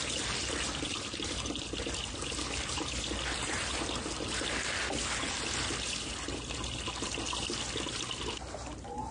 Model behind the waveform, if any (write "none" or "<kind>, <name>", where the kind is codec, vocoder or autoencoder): none